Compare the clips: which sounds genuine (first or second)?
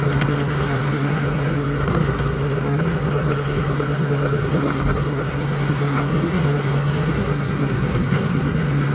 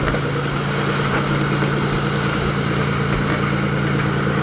second